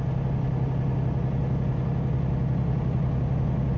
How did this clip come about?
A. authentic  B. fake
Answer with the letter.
A